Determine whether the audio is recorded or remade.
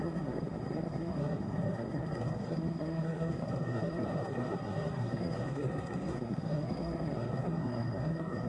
remade